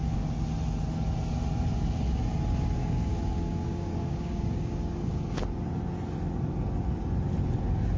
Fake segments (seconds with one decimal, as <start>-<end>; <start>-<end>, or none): 2.8-5.2

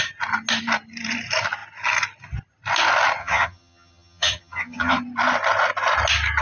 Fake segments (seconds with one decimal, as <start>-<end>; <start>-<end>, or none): 3.2-5.0

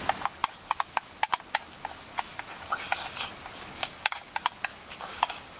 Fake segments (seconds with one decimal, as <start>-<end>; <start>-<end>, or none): 3.7-4.3; 4.7-5.6

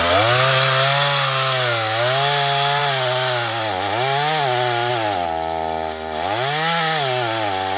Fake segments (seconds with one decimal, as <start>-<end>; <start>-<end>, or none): none

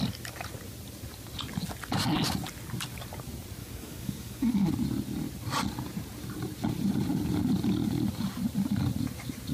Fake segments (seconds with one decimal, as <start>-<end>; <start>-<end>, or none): 3.6-4.7

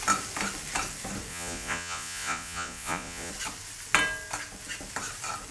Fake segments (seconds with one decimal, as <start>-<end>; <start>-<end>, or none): 1.3-3.3